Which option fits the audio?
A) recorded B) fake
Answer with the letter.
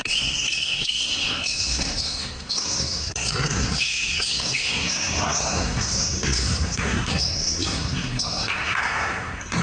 B